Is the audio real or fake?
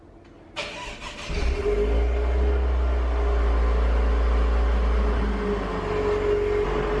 real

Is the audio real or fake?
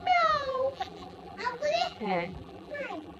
fake